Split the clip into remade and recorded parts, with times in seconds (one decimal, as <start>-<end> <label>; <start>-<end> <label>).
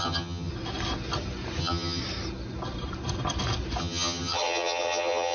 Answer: 0.0-0.5 remade; 0.5-1.6 recorded; 1.6-2.0 remade; 2.0-3.8 recorded; 3.8-5.3 remade